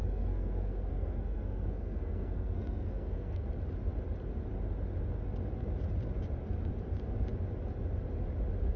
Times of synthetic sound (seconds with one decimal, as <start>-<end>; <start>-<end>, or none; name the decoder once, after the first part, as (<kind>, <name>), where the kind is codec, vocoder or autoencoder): 0.0-3.5 (codec, SNAC)